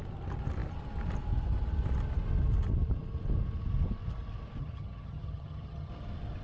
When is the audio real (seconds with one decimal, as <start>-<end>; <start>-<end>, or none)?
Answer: 0.0-4.6; 5.9-6.4